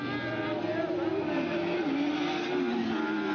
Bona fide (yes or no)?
yes